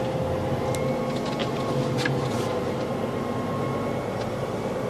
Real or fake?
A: real